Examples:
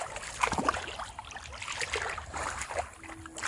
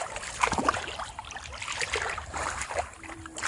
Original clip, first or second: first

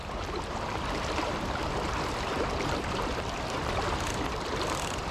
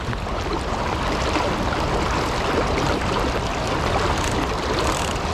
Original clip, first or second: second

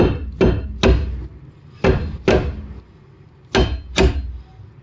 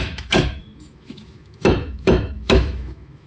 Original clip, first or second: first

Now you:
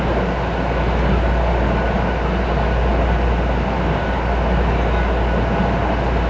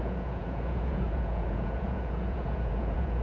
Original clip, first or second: first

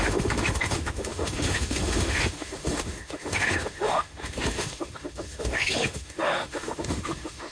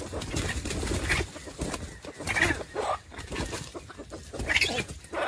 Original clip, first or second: second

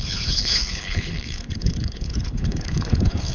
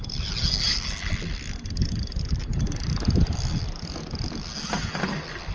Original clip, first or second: second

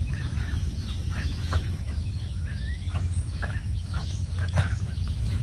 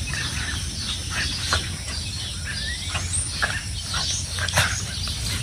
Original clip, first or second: second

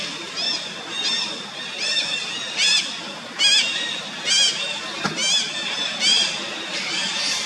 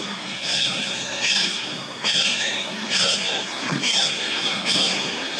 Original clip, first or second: first